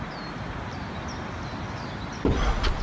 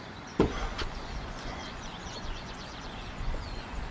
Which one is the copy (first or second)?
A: second